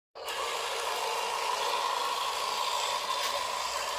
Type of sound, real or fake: real